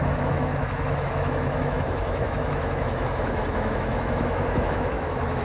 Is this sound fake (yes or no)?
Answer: yes